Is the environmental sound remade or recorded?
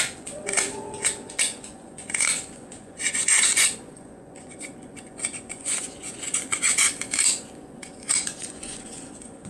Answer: remade